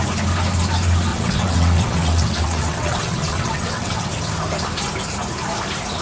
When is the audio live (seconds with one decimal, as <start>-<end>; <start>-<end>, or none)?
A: 0.0-1.1; 4.1-6.0